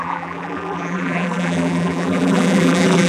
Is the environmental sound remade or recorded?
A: remade